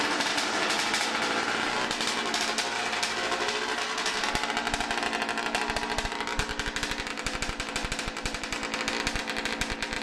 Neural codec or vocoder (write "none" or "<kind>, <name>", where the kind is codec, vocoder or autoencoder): none